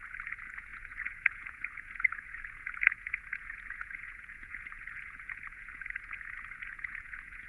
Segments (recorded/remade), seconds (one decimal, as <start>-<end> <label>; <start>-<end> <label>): 0.0-7.5 remade